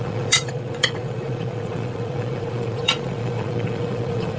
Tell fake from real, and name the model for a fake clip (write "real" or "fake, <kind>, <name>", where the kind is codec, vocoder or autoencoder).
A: fake, vocoder, Vocos